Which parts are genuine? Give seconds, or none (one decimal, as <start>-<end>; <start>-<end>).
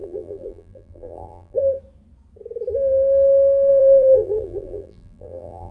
1.6-3.7